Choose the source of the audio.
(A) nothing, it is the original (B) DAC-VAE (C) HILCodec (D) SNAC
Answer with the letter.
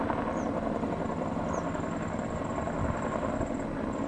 A